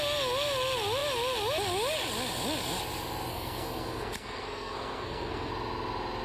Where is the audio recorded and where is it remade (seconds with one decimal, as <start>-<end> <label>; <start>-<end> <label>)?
0.0-3.3 recorded; 3.3-5.5 remade; 5.5-6.2 recorded